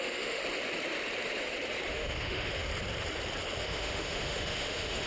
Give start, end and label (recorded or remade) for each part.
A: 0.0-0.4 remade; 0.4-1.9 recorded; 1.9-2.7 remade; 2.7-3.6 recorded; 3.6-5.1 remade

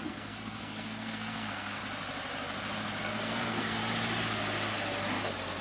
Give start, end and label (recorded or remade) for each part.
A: 0.0-1.8 remade; 1.8-3.0 recorded; 3.0-3.8 remade; 3.8-5.6 recorded

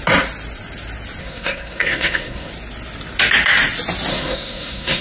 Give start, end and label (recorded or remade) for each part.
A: 0.0-1.2 recorded; 1.2-2.5 remade; 2.5-4.1 recorded; 4.1-5.0 remade

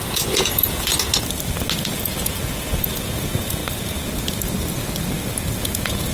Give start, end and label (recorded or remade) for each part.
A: 0.0-0.9 remade; 0.9-1.8 recorded; 1.8-3.6 remade; 3.6-5.6 recorded; 5.6-6.1 remade

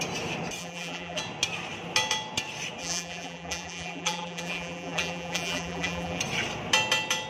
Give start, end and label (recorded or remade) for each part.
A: 0.0-0.6 recorded; 0.6-1.2 remade; 1.2-2.8 recorded; 2.8-6.2 remade; 6.2-7.3 recorded